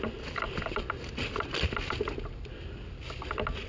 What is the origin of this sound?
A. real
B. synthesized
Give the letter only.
A